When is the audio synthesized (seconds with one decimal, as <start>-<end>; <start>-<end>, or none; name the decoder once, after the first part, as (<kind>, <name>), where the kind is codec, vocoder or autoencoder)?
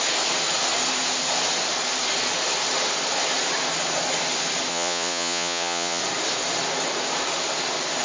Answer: 4.7-6.0 (vocoder, Vocos)